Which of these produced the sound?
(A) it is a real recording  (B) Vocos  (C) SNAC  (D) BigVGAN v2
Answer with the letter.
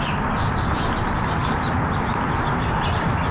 A